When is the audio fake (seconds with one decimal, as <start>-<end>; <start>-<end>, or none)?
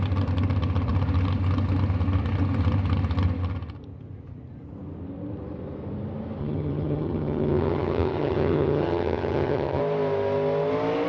6.4-9.8